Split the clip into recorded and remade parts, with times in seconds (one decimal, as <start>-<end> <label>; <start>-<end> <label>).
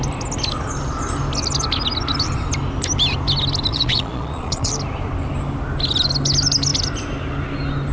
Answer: 0.0-3.7 recorded; 3.7-4.7 remade; 4.7-7.9 recorded